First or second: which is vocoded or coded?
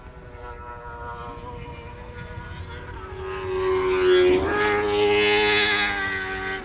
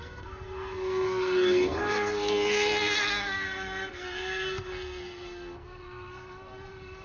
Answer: second